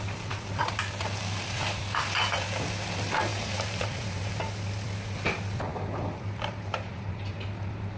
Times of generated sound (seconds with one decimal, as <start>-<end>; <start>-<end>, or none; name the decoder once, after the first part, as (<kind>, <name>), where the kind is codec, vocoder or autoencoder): 3.3-4.4 (vocoder, BigVGAN v2); 5.7-7.1